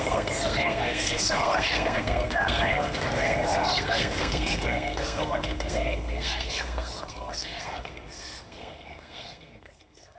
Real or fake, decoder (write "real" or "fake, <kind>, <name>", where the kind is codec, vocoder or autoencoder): fake, codec, SNAC